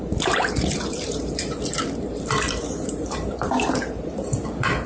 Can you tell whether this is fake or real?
fake